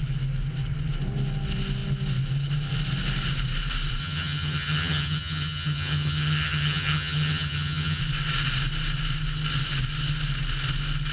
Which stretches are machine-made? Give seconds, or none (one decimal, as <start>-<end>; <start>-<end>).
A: 4.0-8.0